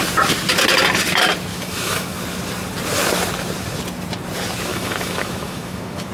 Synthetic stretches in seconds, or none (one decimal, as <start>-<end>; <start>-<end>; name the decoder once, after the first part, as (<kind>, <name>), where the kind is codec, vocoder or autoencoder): 1.5-2.2 (autoencoder, DAC-VAE); 4.7-6.1